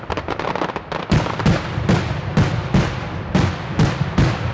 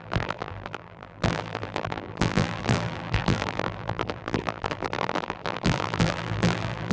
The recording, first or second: first